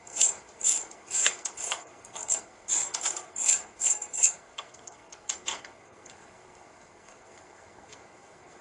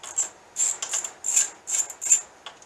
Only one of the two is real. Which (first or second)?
second